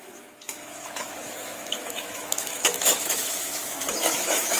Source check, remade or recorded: remade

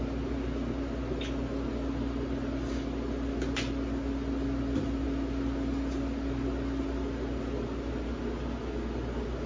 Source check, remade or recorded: recorded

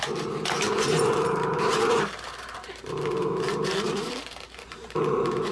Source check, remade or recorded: remade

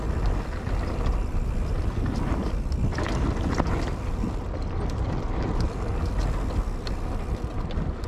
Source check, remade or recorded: recorded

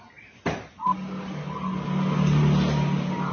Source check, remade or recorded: recorded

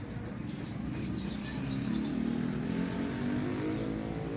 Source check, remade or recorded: recorded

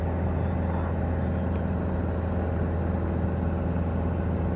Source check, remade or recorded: recorded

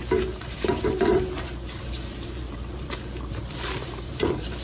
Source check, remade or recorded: remade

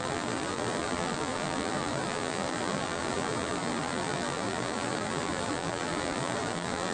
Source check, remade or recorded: remade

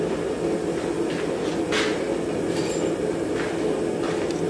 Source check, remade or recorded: recorded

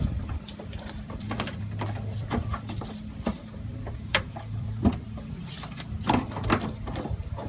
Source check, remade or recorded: remade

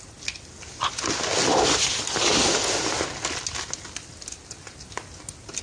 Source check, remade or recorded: recorded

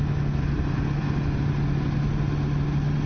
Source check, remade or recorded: recorded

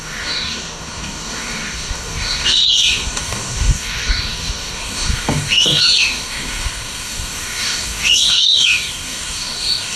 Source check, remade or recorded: remade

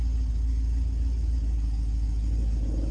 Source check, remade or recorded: recorded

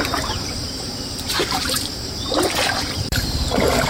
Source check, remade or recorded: remade